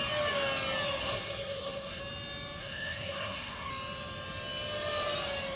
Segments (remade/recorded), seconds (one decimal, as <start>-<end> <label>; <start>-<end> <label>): 0.0-1.0 recorded; 1.0-2.0 remade; 2.0-2.6 recorded; 2.6-3.7 remade; 3.7-5.6 recorded